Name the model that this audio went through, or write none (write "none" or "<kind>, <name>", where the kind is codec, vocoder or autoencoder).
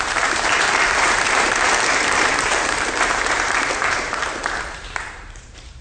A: vocoder, BigVGAN v2